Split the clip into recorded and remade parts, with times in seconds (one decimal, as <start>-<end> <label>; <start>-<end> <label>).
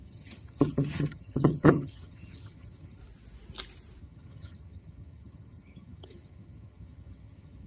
0.0-3.0 remade; 3.0-4.0 recorded; 4.0-7.7 remade